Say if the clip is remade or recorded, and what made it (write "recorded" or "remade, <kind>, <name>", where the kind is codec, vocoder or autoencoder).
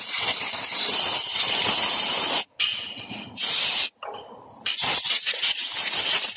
recorded